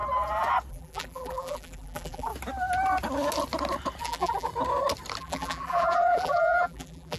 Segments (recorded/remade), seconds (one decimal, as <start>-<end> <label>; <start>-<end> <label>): 0.0-0.7 recorded; 0.7-2.3 remade; 2.3-4.0 recorded; 4.0-4.5 remade; 4.5-5.2 recorded; 5.2-7.2 remade